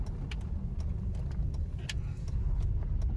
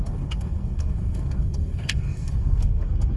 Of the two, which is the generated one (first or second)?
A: second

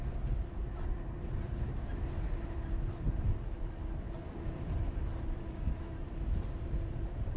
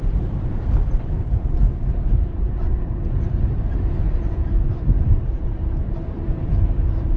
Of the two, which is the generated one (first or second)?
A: second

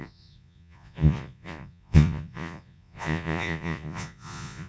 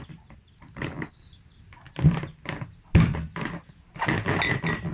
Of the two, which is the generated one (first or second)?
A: first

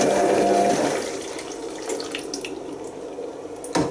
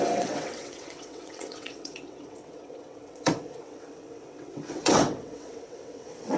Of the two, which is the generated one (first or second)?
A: second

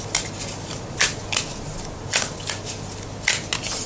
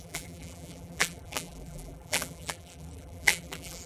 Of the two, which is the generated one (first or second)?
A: second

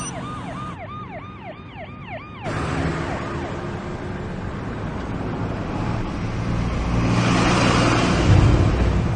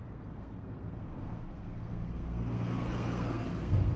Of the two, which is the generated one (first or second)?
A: second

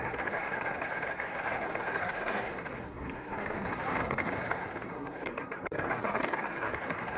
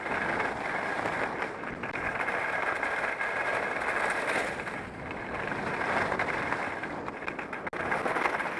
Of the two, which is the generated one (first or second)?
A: first